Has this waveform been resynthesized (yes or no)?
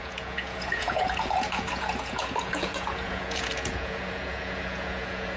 yes